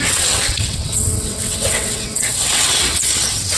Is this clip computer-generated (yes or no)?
yes